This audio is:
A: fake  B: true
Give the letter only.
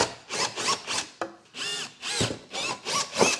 B